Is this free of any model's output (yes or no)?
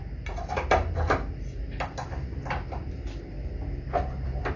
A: yes